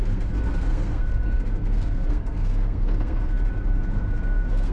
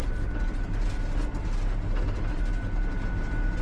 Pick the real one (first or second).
second